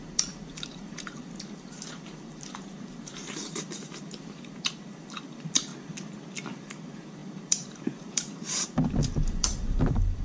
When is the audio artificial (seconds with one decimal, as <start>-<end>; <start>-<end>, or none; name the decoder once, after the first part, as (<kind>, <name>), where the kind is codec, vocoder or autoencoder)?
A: 0.0-5.7 (vocoder, BigVGAN v2); 6.5-10.2